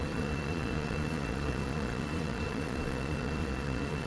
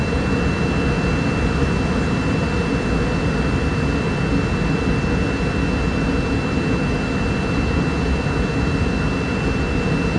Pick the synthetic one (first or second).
first